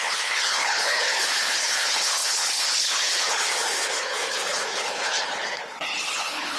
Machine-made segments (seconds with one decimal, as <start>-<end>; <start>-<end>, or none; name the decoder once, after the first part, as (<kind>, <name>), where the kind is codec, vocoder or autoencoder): 0.0-6.6 (codec, HILCodec)